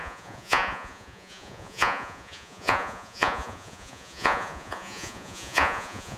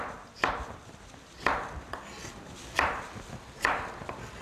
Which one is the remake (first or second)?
first